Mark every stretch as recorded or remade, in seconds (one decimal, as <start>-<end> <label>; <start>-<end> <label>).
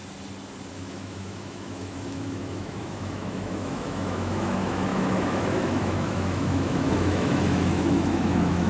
0.0-0.7 recorded; 0.7-8.7 remade